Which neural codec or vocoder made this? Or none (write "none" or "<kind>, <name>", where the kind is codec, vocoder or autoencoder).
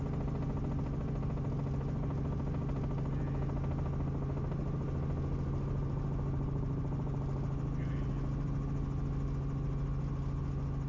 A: none